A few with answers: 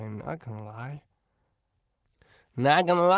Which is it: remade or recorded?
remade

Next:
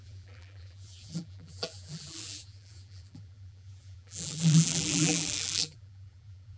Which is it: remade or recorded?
remade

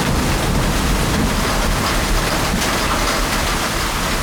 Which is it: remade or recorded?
recorded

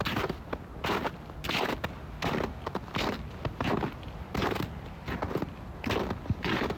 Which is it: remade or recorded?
recorded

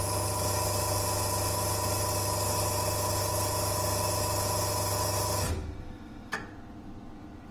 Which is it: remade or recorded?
recorded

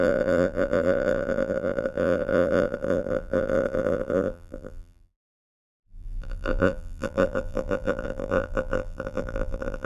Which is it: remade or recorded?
remade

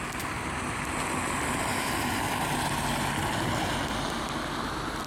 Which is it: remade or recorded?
remade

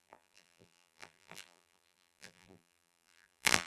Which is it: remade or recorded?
remade